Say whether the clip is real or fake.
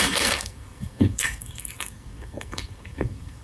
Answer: fake